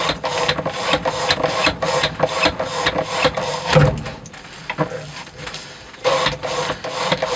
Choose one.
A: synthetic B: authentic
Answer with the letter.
B